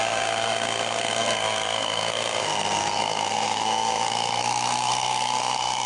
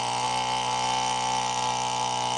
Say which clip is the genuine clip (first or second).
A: second